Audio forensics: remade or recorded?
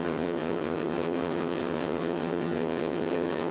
remade